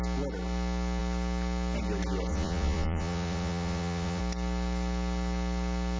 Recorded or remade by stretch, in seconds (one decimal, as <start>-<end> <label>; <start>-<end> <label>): 0.0-2.3 recorded; 2.3-4.2 remade; 4.2-6.0 recorded